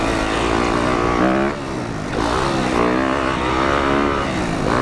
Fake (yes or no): no